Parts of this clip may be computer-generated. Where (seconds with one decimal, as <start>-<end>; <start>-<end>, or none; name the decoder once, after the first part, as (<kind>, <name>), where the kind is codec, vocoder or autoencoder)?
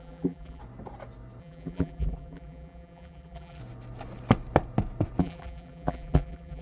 0.0-0.6 (vocoder, BigVGAN v2); 1.4-3.6; 5.2-6.6